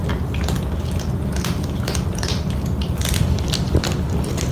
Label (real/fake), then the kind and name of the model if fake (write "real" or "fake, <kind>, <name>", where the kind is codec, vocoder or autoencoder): real